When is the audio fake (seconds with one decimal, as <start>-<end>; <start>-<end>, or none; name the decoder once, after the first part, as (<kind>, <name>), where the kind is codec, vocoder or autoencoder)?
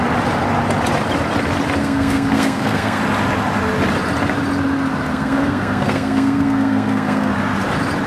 1.8-3.0 (codec, SNAC); 5.1-7.3